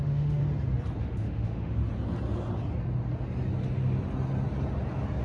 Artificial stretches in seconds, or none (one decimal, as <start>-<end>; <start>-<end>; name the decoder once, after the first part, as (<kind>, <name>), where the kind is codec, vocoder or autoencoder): 0.0-0.4 (autoencoder, DAC-VAE); 1.0-1.8